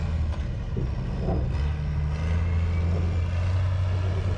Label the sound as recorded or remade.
recorded